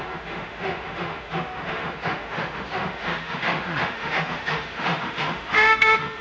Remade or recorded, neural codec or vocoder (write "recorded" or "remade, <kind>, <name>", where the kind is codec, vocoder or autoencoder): remade, autoencoder, DAC-VAE